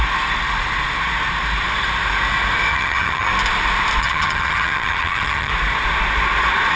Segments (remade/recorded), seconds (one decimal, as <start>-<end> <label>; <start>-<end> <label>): 0.0-2.7 recorded; 2.7-3.3 remade; 3.3-4.0 recorded; 4.0-5.5 remade; 5.5-6.8 recorded